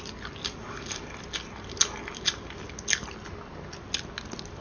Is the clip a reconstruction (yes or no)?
no